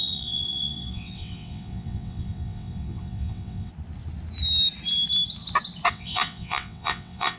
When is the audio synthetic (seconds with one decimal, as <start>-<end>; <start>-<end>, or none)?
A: 0.0-3.7; 5.9-7.4